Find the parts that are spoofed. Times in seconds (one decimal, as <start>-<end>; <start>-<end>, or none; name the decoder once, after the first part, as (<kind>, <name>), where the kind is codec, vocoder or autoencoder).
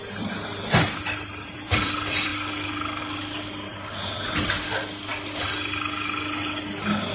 0.0-2.3 (vocoder, BigVGAN v2); 3.0-5.1